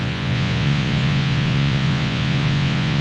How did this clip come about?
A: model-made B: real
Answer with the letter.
A